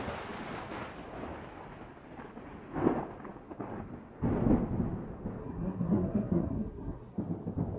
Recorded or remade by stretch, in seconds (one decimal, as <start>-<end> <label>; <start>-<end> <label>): 0.0-5.4 recorded; 5.4-7.2 remade; 7.2-7.8 recorded